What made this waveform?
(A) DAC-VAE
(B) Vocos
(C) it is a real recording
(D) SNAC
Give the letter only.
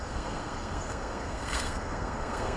D